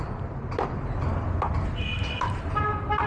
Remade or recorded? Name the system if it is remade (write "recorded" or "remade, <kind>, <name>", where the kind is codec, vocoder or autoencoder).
recorded